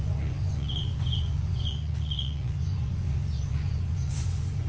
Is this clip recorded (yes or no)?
no